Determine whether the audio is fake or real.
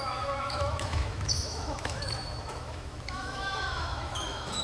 fake